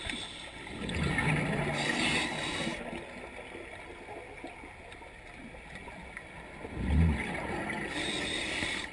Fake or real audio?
real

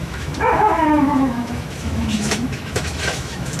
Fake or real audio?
fake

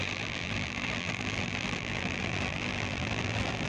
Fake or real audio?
fake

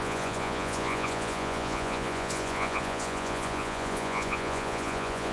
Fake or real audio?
fake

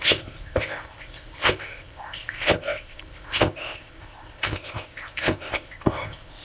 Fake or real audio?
fake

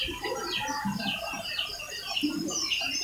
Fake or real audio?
real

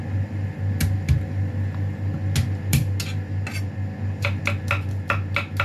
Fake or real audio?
real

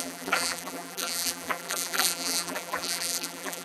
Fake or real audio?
fake